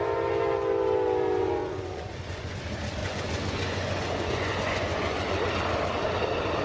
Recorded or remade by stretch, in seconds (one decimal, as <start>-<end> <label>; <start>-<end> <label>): 0.0-1.4 recorded; 1.4-2.6 remade; 2.6-3.0 recorded; 3.0-5.5 remade; 5.5-6.6 recorded